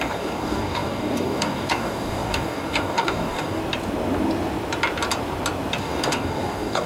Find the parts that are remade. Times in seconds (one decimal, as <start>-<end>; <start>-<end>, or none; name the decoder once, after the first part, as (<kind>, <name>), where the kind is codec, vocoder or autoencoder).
0.0-3.6 (codec, DAC); 5.8-6.9